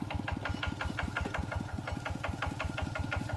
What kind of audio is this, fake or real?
real